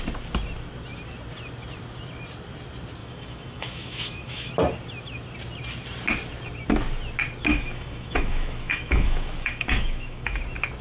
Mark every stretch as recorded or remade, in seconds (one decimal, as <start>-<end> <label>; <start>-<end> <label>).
0.0-3.0 recorded; 3.0-4.5 remade; 4.5-7.5 recorded; 7.5-10.4 remade; 10.4-10.8 recorded